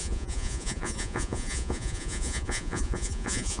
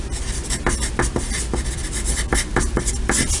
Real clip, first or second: second